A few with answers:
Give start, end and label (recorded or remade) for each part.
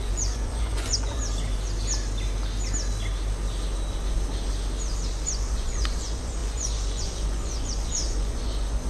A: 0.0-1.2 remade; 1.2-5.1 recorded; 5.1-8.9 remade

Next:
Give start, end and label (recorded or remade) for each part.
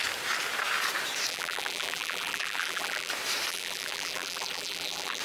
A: 0.0-1.3 recorded; 1.3-3.1 remade; 3.1-3.5 recorded; 3.5-5.2 remade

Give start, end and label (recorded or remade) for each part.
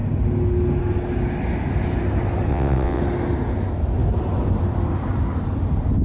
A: 0.0-2.5 recorded; 2.5-3.0 remade; 3.0-6.0 recorded